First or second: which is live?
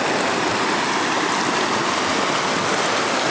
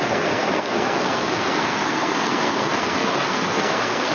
first